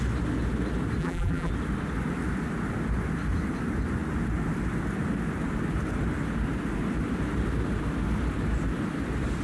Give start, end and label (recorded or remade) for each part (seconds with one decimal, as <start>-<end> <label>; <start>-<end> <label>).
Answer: 0.0-1.0 recorded; 1.0-1.5 remade; 1.5-9.4 recorded